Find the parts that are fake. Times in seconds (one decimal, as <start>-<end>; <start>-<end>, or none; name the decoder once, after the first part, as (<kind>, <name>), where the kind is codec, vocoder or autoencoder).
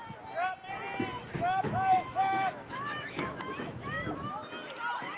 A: 1.2-4.3 (autoencoder, DAC-VAE)